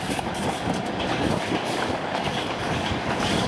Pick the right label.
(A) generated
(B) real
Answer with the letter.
A